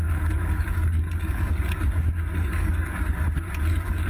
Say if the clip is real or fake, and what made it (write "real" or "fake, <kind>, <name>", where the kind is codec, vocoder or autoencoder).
fake, codec, DAC